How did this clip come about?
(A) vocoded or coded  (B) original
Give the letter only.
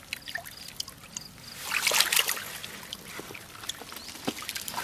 B